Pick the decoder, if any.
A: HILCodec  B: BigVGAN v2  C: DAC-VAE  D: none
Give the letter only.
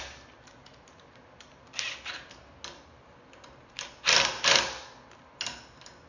D